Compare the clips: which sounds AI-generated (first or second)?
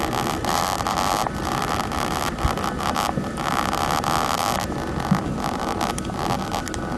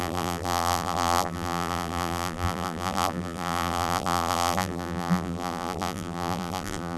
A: second